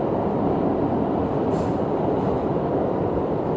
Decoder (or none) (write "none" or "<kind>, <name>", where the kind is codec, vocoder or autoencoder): vocoder, BigVGAN v2